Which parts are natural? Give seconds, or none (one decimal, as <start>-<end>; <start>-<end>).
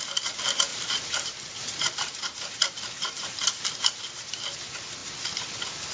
0.0-0.7; 4.2-5.9